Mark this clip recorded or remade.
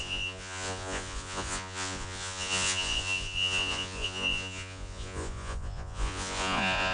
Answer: remade